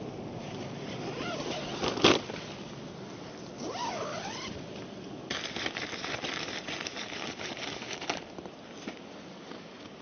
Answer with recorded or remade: recorded